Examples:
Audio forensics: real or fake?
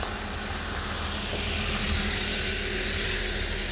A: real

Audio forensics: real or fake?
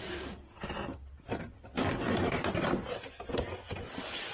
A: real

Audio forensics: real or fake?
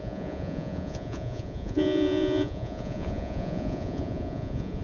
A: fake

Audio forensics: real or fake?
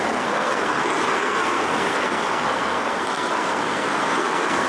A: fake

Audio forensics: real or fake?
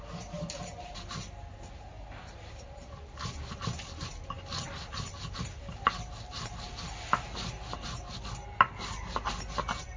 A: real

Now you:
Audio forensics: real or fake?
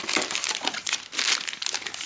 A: real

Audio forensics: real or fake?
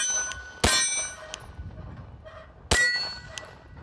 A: real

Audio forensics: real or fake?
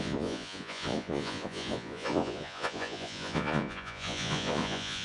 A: fake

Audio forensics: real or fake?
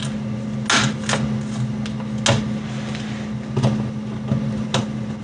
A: real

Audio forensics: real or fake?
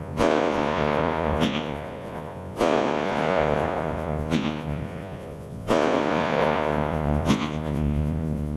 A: fake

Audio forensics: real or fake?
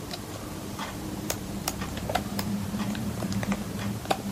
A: fake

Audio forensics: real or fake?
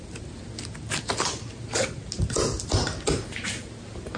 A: real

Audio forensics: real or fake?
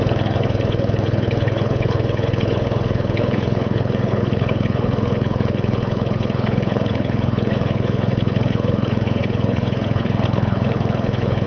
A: fake